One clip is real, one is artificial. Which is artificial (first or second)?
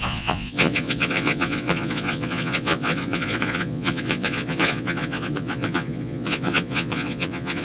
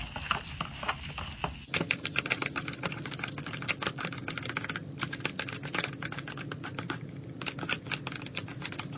first